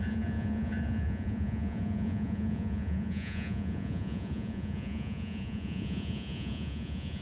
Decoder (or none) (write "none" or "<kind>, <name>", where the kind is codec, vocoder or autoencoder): vocoder, Vocos